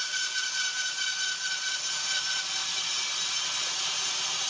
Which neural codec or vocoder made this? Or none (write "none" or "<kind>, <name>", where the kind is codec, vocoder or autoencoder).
none